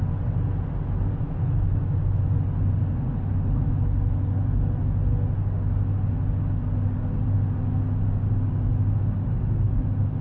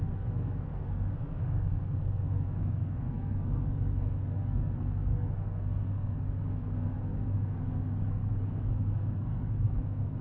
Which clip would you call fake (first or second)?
second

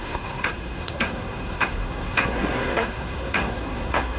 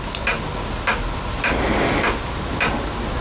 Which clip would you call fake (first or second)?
first